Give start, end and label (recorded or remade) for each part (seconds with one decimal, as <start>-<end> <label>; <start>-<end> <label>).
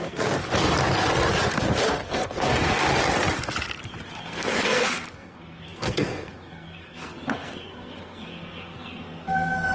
0.0-0.4 remade; 0.4-1.8 recorded; 1.8-2.8 remade; 2.8-4.2 recorded; 4.2-9.7 remade